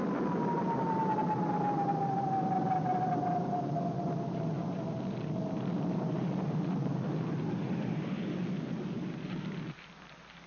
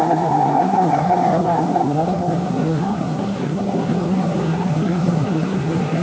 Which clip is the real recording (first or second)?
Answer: first